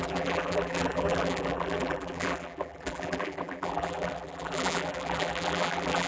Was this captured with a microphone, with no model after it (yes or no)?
no